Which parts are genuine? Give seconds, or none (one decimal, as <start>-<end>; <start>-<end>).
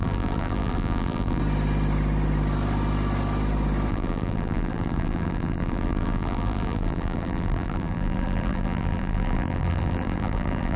1.4-3.9